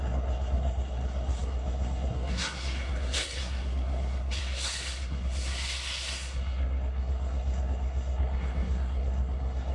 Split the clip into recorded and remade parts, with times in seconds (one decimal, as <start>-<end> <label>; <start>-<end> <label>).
0.0-9.7 remade